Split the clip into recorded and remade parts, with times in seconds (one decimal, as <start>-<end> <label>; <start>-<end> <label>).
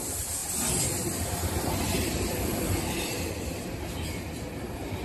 0.0-5.0 remade